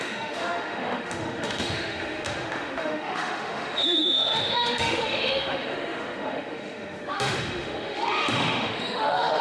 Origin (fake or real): fake